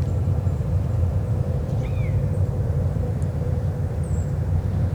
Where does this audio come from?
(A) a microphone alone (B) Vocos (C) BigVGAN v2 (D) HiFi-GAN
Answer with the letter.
C